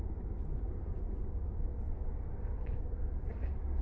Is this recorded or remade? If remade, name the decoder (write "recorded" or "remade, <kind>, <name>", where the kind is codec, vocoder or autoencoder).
recorded